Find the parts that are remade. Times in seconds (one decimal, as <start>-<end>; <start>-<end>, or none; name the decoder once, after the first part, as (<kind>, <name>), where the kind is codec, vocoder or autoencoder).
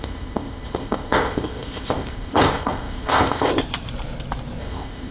0.0-3.5 (codec, ZipCodec); 4.6-5.1